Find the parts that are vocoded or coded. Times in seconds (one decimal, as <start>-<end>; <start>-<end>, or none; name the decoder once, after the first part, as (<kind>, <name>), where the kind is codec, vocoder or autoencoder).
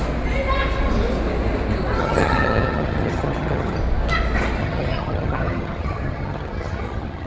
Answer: 2.0-3.8 (vocoder, HiFi-GAN); 4.6-7.3